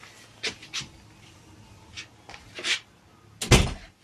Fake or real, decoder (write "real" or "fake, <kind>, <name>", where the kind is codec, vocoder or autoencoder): real